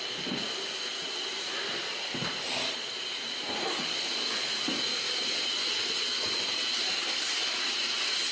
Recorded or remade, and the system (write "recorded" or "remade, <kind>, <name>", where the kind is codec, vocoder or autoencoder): recorded